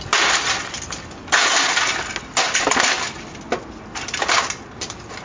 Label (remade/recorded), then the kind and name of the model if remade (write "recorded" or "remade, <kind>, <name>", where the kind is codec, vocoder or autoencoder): recorded